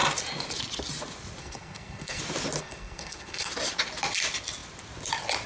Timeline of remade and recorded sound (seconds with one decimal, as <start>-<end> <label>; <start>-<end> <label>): 0.0-1.4 recorded; 1.4-2.2 remade; 2.2-2.6 recorded; 2.6-3.5 remade; 3.5-5.5 recorded